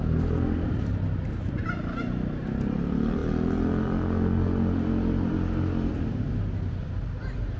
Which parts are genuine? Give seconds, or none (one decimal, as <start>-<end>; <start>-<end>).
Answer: 0.0-7.6